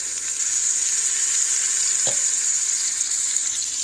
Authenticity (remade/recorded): recorded